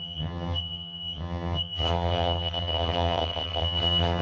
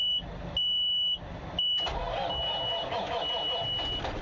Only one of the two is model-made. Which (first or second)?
first